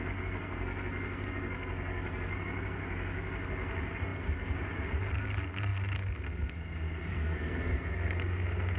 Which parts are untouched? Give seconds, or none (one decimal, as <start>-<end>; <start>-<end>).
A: none